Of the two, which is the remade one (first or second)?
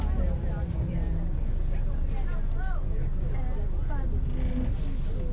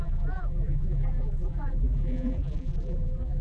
second